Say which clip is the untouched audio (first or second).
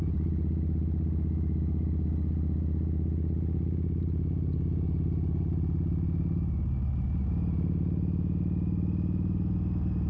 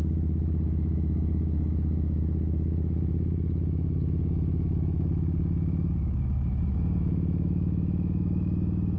first